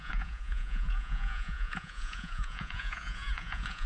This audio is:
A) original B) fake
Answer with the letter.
B